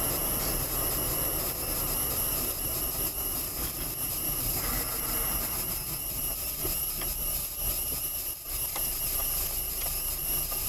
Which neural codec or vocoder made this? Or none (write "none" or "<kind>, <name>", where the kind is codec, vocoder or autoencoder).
none